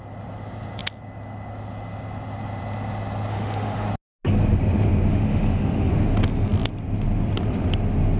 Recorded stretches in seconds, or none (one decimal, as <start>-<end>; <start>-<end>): 0.0-3.3; 3.9-5.1; 5.9-8.2